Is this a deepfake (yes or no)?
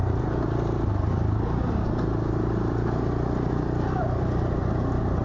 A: no